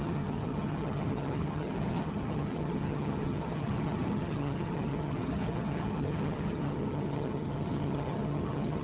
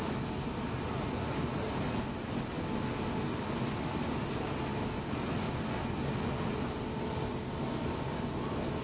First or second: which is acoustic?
second